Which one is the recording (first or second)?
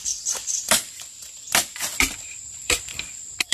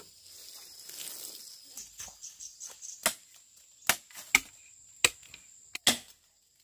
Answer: second